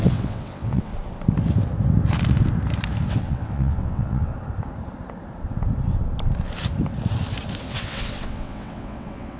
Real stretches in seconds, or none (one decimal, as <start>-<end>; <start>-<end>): 0.9-3.1; 4.3-7.6